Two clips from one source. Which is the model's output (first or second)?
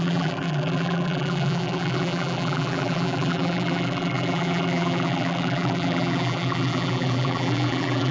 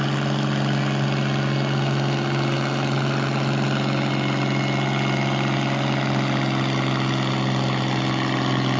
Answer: first